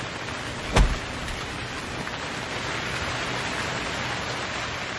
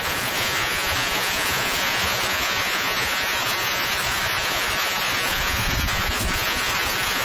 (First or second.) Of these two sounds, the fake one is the second